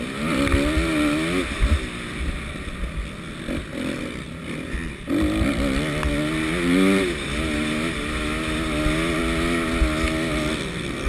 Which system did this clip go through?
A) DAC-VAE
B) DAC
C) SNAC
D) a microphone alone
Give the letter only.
D